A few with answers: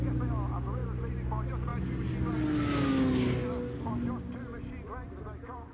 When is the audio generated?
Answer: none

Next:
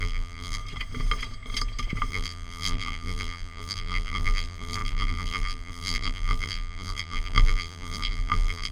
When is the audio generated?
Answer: 0.0-0.6 (vocoder, BigVGAN v2); 2.1-8.7

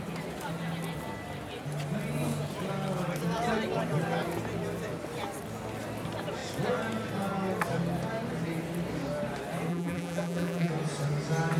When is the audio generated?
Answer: 9.7-10.7 (vocoder, BigVGAN v2)

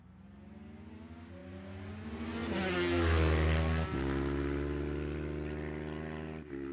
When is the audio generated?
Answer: none

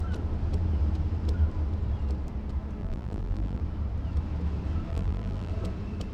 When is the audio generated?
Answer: 2.8-3.6 (vocoder, BigVGAN v2); 4.9-5.5